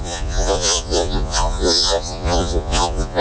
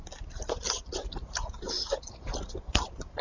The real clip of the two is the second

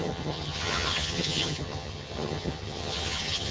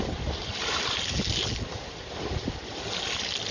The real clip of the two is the second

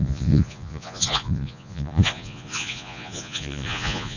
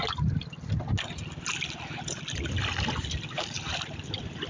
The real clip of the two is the second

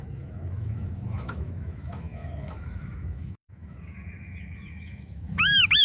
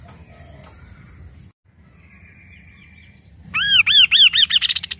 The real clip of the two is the second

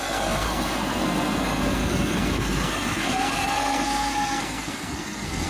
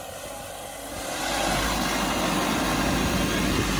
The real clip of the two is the second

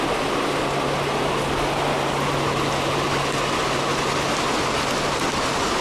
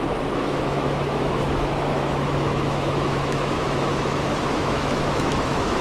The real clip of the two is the first